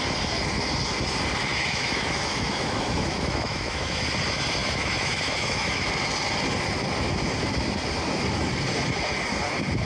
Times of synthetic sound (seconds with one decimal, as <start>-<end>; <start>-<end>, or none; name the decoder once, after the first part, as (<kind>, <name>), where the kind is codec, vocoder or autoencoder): 1.5-4.0 (autoencoder, DAC-VAE); 4.6-5.9